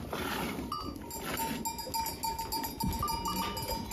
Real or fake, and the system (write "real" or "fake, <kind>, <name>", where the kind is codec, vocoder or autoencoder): real